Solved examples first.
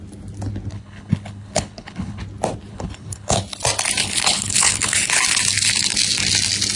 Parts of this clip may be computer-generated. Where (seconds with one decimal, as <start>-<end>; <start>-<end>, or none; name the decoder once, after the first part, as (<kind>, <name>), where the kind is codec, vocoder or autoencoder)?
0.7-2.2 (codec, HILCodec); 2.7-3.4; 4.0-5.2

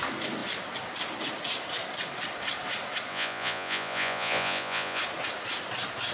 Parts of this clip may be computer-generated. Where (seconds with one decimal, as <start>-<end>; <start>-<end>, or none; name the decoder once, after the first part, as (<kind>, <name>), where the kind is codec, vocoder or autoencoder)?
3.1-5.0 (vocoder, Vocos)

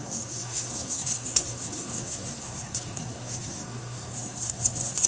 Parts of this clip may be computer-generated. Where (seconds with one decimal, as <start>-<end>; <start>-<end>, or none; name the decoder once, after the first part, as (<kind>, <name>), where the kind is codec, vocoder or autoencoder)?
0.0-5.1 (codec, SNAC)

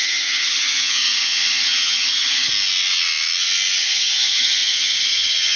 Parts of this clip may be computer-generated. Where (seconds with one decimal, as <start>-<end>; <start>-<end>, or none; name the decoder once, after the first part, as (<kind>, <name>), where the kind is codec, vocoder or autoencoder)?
0.0-2.5 (vocoder, HiFi-GAN); 3.8-5.6